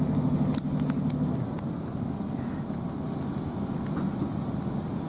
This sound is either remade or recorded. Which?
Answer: recorded